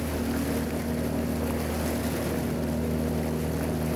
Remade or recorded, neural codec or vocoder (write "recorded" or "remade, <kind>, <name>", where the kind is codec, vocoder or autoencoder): recorded